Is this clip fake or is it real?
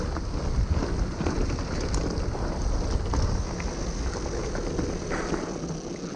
real